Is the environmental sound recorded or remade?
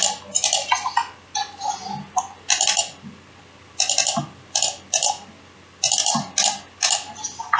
recorded